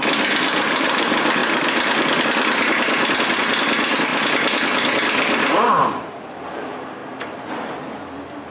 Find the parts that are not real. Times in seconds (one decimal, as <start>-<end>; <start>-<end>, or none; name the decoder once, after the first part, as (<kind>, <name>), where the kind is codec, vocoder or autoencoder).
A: 0.0-1.4 (vocoder, BigVGAN v2); 2.2-8.5